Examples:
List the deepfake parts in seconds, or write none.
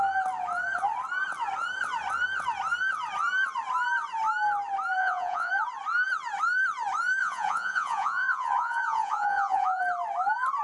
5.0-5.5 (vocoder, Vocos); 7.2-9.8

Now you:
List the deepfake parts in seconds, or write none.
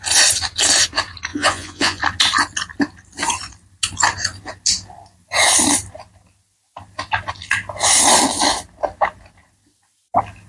1.3-2.0 (vocoder, Vocos)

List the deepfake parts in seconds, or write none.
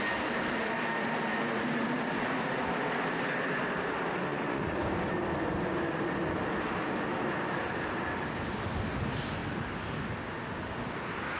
4.3-4.8 (vocoder, Vocos)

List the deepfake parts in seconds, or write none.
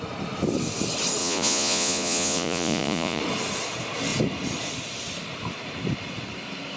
1.2-3.2 (vocoder, Vocos)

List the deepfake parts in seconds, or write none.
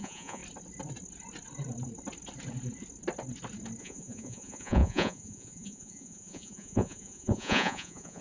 0.0-0.4 (vocoder, Vocos); 3.8-8.2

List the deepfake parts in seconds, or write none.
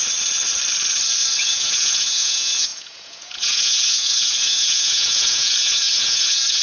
1.4-6.6 (vocoder, Vocos)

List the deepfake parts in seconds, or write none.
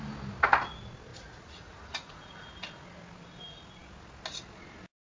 1.1-2.5 (vocoder, Vocos)